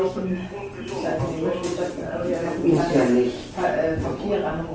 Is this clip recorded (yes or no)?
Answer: yes